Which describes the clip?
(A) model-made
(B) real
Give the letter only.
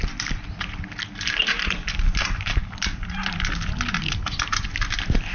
B